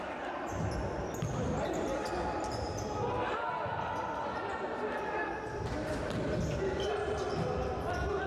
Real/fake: real